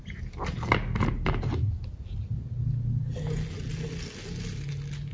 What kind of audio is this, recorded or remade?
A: recorded